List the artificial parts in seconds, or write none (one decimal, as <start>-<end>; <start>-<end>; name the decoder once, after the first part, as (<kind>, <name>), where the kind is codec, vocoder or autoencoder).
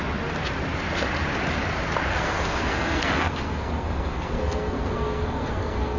2.1-6.0 (codec, SNAC)